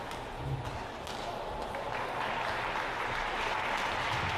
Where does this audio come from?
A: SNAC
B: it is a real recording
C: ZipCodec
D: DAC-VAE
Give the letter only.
B